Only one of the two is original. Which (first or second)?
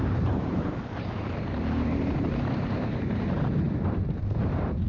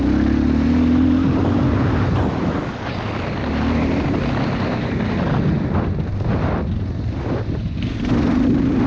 second